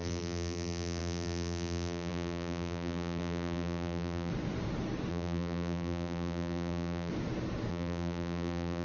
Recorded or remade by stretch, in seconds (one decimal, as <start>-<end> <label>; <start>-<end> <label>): 0.0-4.3 remade; 4.3-5.1 recorded; 5.1-7.1 remade; 7.1-7.7 recorded; 7.7-8.8 remade